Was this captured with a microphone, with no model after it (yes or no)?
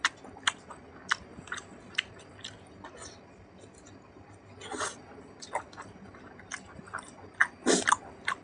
yes